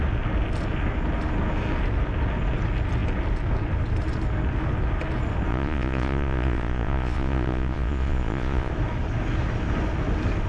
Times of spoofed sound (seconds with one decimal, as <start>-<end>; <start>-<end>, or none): 5.5-8.7